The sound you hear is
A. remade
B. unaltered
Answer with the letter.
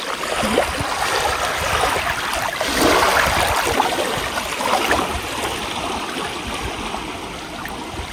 B